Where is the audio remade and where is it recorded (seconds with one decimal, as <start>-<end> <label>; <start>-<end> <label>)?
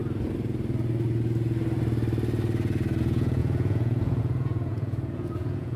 0.0-3.0 recorded; 3.0-5.8 remade